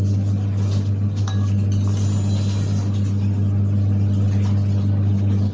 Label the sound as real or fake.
real